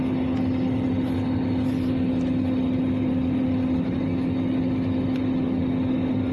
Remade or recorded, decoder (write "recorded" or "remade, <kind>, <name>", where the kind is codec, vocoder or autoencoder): recorded